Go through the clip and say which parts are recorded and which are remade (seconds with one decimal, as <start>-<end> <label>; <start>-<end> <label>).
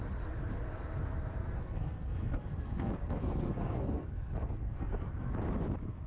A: 0.0-1.4 recorded; 1.4-5.1 remade; 5.1-6.1 recorded